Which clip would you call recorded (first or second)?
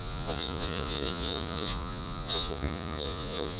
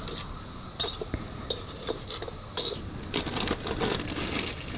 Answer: second